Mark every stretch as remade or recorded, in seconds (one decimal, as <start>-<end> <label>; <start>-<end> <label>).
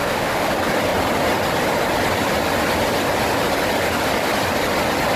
0.0-0.5 remade; 0.5-5.2 recorded